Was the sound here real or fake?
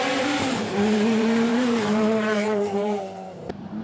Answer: fake